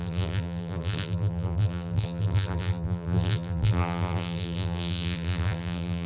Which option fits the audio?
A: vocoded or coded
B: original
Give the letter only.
A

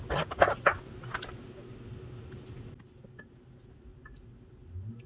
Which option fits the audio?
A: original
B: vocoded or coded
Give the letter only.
A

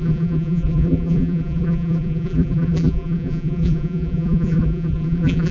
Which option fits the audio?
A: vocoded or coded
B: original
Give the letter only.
A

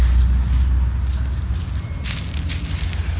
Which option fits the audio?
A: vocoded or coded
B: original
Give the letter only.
B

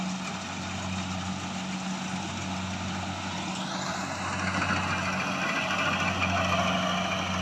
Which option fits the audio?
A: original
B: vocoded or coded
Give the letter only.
A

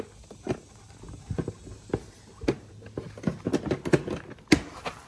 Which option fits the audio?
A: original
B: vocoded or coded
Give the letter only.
A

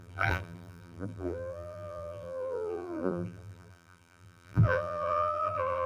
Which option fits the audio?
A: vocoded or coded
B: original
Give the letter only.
A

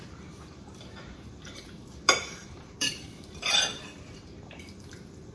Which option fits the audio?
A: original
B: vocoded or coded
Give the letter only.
B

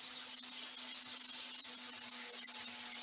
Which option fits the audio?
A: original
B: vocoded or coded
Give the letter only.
A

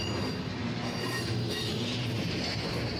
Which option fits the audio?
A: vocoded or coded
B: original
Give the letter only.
B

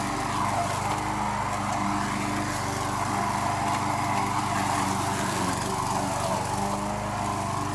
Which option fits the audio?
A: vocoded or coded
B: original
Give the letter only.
B